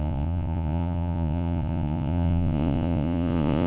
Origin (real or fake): fake